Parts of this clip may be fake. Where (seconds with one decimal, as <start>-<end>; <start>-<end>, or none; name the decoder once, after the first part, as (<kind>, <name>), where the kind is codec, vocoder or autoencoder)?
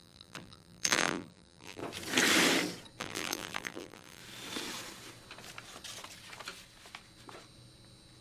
0.0-1.8 (vocoder, BigVGAN v2); 3.0-4.2